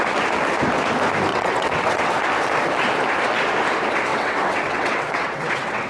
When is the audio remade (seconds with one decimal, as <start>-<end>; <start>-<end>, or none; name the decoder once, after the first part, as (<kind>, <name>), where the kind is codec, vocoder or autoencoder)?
1.3-2.2 (vocoder, WaveNeXt); 4.1-5.9